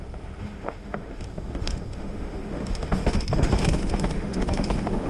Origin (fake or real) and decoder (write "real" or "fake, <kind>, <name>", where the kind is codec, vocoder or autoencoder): fake, autoencoder, DAC-VAE